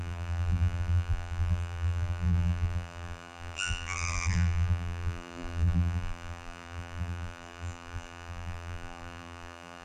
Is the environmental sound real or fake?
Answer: fake